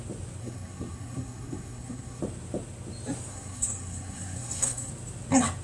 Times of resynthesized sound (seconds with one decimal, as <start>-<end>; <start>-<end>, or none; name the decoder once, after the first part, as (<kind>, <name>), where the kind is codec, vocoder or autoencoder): 0.4-2.2 (codec, SNAC); 3.3-4.9